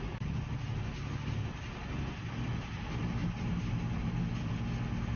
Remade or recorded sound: recorded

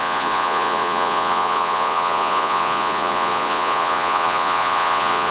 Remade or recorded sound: remade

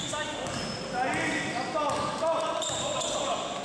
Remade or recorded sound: recorded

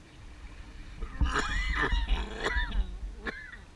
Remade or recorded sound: recorded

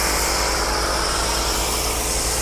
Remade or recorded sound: recorded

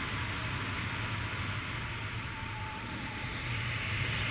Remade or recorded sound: recorded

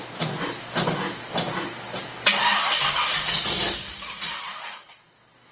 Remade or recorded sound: recorded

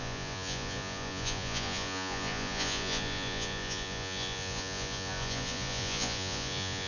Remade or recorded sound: remade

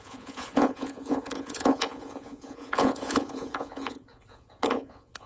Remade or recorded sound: remade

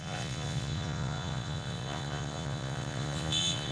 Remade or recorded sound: remade